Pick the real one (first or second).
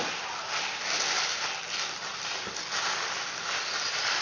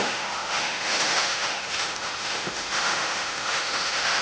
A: first